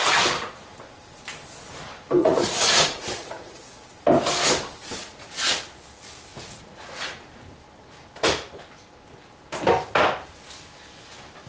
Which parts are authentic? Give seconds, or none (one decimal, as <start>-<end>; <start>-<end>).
0.0-2.2; 3.9-4.8; 5.3-6.3; 7.2-11.5